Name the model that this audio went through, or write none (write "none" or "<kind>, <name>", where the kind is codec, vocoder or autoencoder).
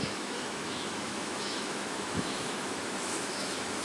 autoencoder, DAC-VAE